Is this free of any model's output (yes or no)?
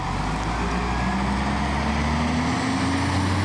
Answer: yes